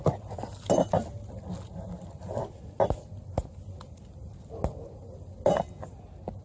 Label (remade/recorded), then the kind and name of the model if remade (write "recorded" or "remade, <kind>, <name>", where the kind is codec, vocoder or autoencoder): recorded